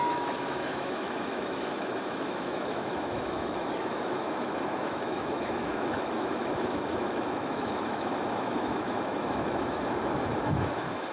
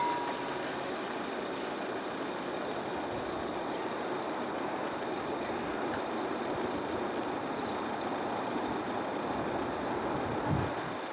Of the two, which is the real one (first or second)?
second